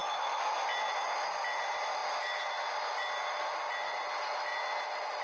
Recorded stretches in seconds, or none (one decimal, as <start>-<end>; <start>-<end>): 0.5-5.2